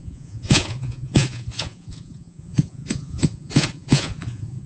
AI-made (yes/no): yes